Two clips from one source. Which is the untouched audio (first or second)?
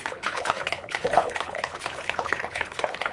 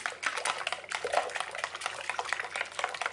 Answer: second